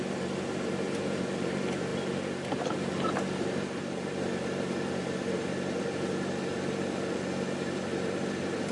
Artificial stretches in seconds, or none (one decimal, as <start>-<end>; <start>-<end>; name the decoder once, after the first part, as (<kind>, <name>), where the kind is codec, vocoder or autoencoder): 0.0-8.7 (vocoder, BigVGAN v2)